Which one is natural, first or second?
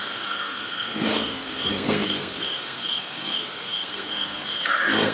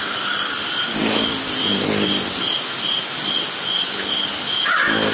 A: second